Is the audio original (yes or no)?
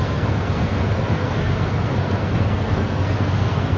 no